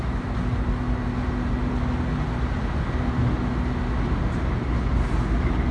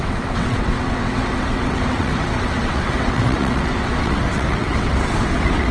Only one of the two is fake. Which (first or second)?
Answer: second